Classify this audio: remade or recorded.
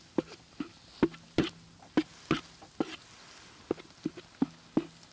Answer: recorded